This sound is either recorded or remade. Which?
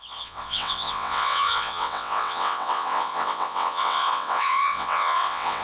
remade